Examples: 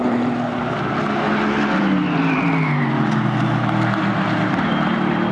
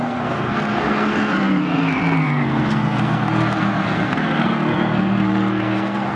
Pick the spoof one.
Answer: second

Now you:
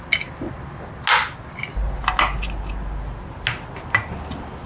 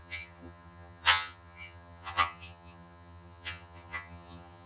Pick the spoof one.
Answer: second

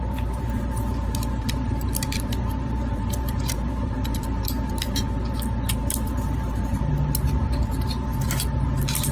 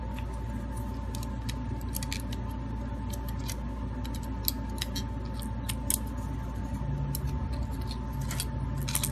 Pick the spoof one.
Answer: first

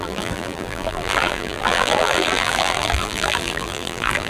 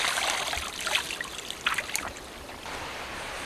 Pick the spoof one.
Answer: first